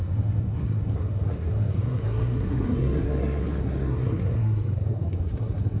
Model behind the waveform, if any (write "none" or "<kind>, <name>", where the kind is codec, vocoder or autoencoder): codec, SNAC